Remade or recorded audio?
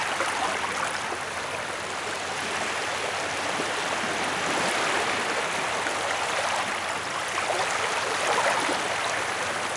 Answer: recorded